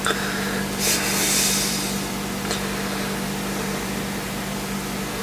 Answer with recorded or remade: recorded